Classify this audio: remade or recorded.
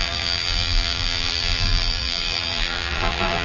remade